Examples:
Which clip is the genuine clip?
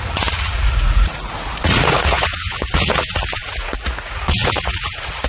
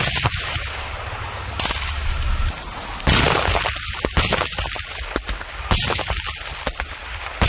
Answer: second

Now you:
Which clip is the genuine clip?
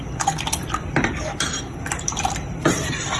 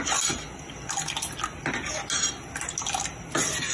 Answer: second